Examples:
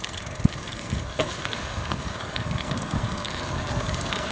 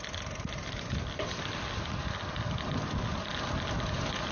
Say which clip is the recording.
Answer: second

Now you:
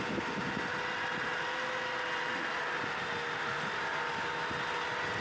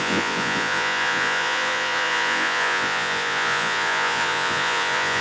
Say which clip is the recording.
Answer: first